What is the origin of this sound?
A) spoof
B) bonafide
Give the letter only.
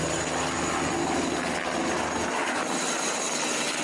B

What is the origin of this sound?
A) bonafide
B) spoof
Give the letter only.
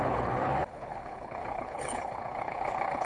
B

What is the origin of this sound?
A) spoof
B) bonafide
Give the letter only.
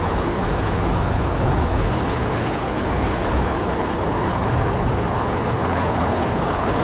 A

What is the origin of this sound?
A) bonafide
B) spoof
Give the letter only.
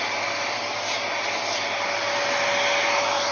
A